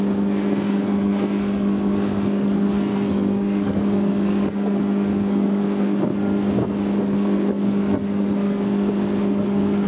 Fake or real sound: fake